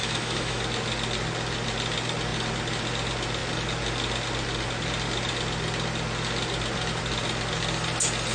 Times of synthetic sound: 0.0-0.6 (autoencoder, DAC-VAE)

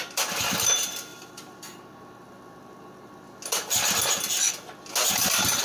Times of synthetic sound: none

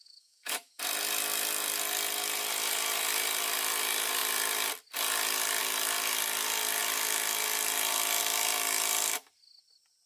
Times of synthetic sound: 0.0-0.8 (autoencoder, DAC-VAE)